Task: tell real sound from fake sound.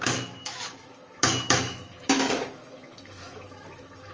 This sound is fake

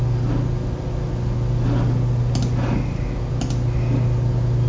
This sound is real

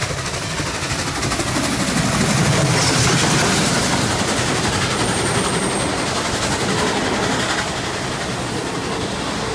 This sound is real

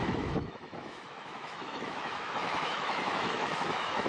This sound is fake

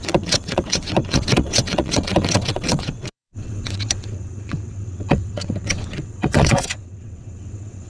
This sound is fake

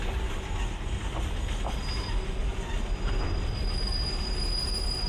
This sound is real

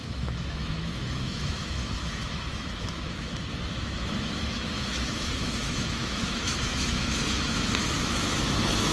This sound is fake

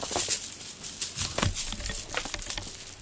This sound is real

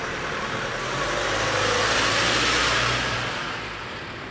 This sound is fake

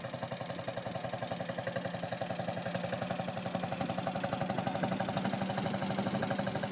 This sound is real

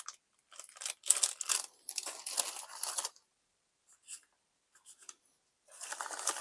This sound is real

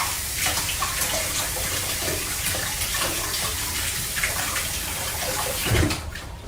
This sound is fake